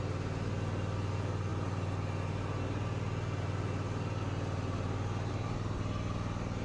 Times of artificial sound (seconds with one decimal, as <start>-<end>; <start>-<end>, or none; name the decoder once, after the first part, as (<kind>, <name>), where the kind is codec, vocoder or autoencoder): none